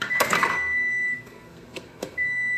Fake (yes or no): yes